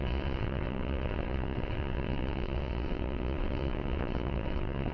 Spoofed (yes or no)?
yes